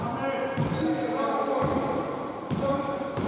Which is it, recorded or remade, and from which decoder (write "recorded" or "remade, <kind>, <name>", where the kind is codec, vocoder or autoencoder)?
recorded